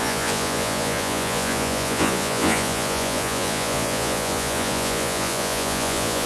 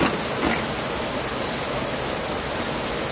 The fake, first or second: first